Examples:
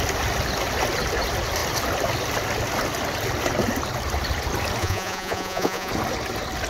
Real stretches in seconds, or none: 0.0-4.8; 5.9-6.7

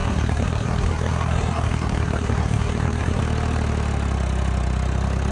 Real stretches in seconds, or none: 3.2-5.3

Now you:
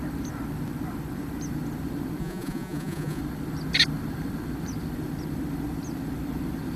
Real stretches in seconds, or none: 0.0-2.2; 3.2-6.8

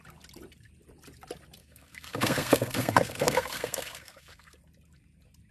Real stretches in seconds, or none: 0.0-1.6; 4.6-5.5